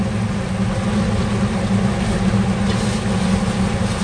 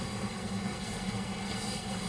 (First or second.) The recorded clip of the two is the first